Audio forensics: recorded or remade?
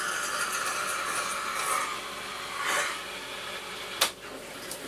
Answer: recorded